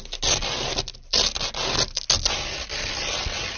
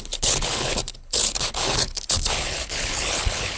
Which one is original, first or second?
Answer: first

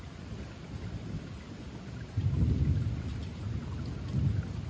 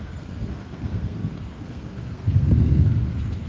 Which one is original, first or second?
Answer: first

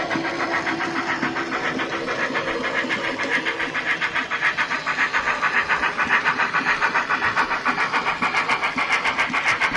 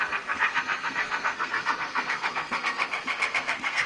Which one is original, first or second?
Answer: first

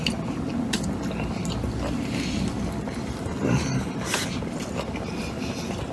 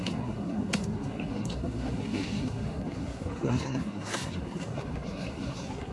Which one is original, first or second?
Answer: first